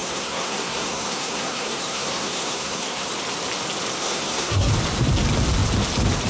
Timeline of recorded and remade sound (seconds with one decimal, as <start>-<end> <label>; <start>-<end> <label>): 0.0-3.1 remade; 3.1-4.0 recorded; 4.0-4.7 remade; 4.7-6.3 recorded